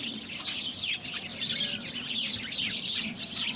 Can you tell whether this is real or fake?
real